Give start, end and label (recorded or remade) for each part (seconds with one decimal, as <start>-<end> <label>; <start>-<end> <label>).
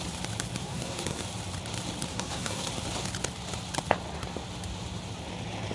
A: 0.0-0.6 recorded; 0.6-1.2 remade; 1.2-2.1 recorded; 2.1-2.7 remade; 2.7-5.7 recorded